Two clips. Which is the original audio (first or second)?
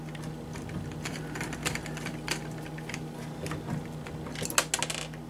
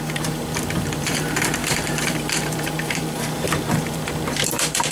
first